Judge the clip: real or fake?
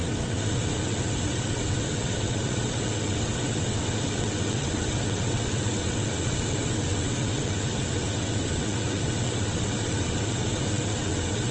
fake